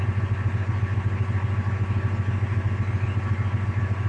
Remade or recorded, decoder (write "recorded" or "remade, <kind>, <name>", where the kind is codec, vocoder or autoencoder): recorded